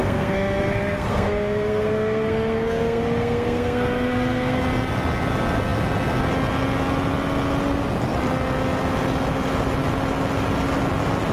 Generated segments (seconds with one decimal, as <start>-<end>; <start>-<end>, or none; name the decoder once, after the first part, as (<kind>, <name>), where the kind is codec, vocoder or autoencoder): 0.0-4.6 (codec, SNAC)